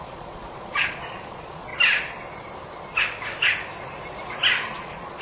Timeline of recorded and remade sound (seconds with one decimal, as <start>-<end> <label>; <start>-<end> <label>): 0.0-1.7 remade; 1.7-4.8 recorded; 4.8-5.2 remade

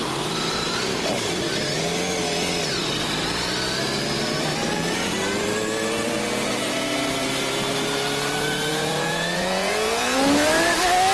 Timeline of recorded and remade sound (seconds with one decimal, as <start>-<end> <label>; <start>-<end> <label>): 0.0-8.7 recorded; 8.7-10.2 remade; 10.2-11.1 recorded